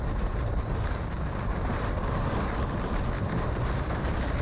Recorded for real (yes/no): no